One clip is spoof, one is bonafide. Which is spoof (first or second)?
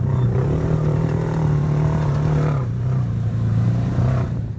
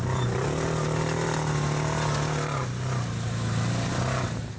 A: first